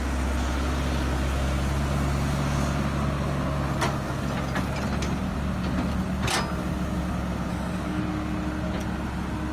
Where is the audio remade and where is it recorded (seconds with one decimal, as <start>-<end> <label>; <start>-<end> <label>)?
0.0-7.5 recorded; 7.5-8.0 remade; 8.0-9.5 recorded